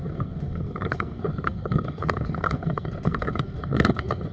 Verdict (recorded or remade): remade